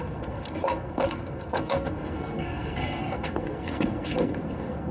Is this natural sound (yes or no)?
no